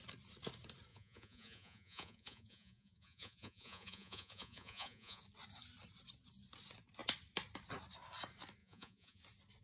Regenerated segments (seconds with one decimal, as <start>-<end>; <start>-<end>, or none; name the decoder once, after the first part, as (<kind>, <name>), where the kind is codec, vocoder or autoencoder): 0.9-5.2 (vocoder, Vocos); 8.6-9.2